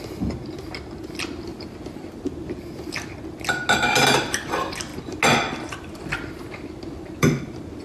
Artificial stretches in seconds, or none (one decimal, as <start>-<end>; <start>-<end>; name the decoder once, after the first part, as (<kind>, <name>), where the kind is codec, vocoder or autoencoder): none